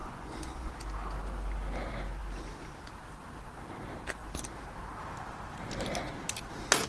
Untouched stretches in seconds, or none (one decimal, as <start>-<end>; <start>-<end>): 0.7-6.9